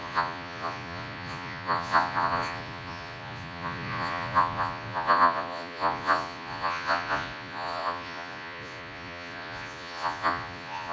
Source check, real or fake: fake